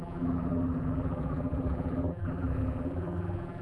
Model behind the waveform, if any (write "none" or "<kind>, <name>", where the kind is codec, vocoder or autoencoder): vocoder, BigVGAN v2